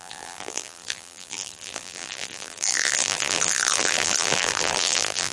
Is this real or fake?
fake